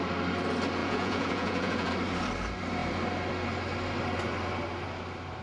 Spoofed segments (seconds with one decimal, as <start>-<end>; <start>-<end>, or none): 0.8-1.9